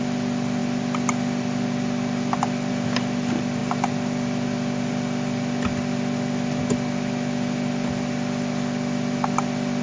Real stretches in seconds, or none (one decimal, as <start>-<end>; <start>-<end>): 0.0-9.8